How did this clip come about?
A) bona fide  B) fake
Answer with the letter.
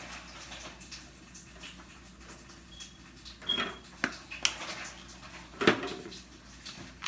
A